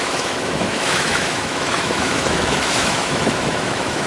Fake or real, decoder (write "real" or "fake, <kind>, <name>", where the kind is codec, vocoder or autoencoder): fake, autoencoder, DAC-VAE